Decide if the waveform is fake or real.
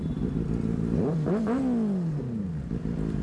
real